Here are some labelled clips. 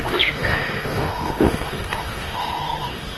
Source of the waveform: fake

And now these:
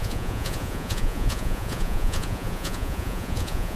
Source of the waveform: fake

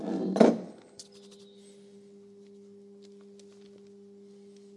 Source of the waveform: real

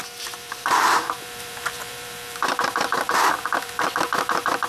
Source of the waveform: fake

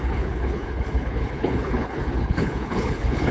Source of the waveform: fake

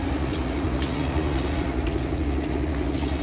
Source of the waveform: fake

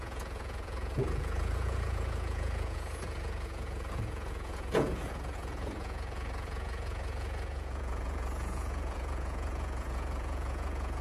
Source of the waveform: fake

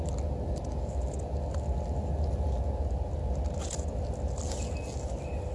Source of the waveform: real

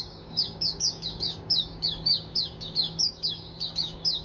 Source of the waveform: fake